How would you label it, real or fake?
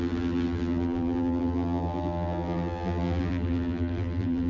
fake